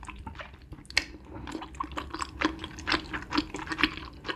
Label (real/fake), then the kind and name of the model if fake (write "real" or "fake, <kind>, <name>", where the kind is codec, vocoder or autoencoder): real